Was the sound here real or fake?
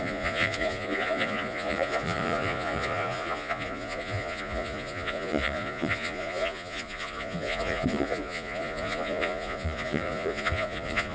fake